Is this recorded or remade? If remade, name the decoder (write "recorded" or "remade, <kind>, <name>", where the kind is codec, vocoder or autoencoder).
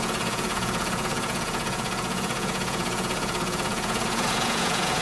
remade, vocoder, Vocos